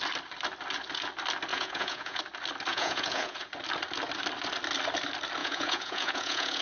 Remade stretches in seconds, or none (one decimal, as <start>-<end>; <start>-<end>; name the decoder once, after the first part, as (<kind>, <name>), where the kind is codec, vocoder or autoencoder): 1.5-2.2 (vocoder, Vocos); 2.7-3.5; 5.4-6.6